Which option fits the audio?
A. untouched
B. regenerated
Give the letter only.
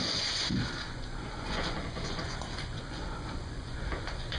B